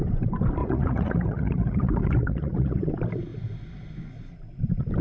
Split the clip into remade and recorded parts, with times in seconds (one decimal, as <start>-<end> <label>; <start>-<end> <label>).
0.0-0.6 recorded; 0.6-2.9 remade; 2.9-5.0 recorded